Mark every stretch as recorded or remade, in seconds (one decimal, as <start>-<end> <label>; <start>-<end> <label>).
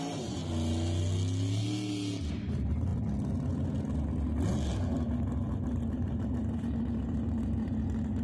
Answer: 0.0-0.4 remade; 0.4-2.3 recorded; 2.3-2.9 remade; 2.9-5.8 recorded; 5.8-8.2 remade